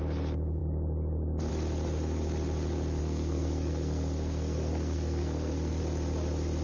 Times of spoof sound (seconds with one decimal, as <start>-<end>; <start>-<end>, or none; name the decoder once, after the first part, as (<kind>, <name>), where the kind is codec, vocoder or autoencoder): 3.0-5.8 (codec, SNAC)